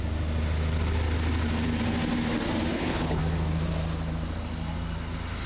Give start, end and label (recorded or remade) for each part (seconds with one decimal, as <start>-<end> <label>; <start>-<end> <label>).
0.0-2.7 recorded; 2.7-3.2 remade; 3.2-5.5 recorded